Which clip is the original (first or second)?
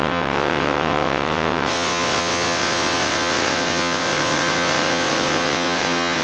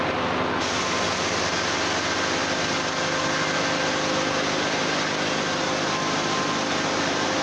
second